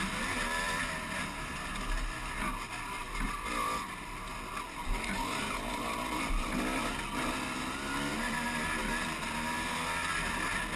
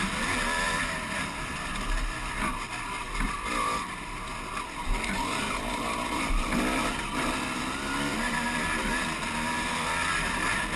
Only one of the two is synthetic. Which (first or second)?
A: second